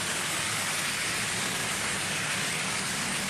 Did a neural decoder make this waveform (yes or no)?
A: yes